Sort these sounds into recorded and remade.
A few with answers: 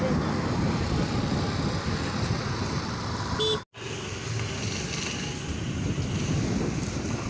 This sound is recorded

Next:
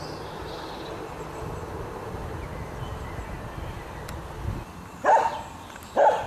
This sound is recorded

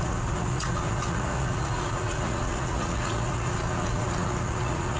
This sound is remade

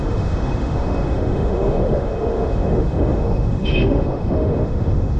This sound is remade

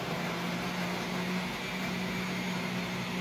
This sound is recorded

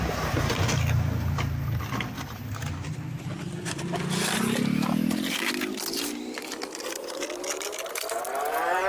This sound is recorded